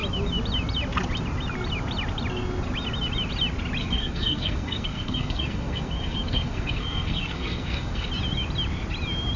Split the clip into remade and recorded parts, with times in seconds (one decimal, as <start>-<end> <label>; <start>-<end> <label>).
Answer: 0.0-3.8 recorded; 3.8-8.1 remade; 8.1-9.4 recorded